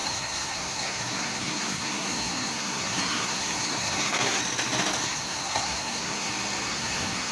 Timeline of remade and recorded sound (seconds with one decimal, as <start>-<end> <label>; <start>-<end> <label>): 0.0-4.4 remade; 4.4-5.0 recorded; 5.0-6.3 remade; 6.3-6.7 recorded; 6.7-7.3 remade